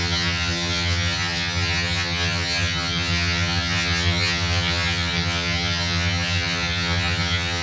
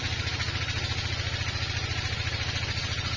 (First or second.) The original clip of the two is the second